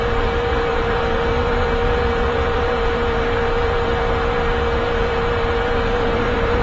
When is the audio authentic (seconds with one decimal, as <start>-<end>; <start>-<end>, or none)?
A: none